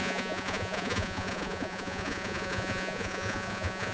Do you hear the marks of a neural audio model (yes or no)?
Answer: yes